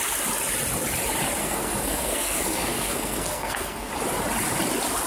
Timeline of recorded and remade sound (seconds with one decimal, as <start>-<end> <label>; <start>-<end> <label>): 0.0-1.4 recorded; 1.4-3.9 remade; 3.9-5.1 recorded